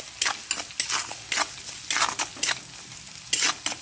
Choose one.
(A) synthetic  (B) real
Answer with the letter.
B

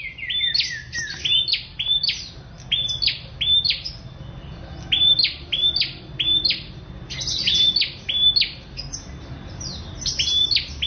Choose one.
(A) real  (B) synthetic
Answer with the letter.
A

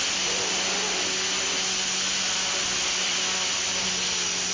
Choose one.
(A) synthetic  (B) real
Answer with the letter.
B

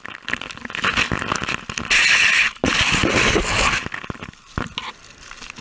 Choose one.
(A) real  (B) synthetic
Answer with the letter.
A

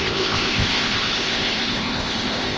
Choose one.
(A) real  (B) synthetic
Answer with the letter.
B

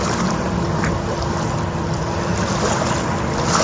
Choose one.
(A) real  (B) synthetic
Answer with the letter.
A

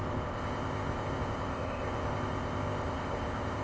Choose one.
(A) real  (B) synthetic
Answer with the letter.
B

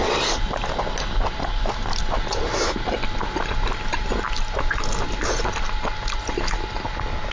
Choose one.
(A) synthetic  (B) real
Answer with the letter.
B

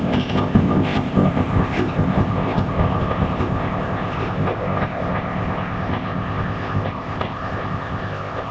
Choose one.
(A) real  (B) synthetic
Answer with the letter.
B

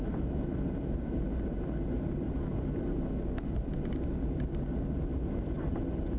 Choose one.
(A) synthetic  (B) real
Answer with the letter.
B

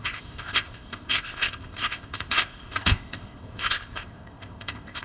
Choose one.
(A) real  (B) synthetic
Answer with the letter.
B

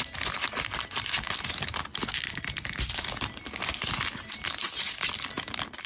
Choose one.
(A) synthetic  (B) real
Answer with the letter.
B